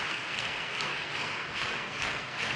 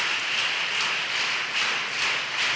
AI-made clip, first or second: first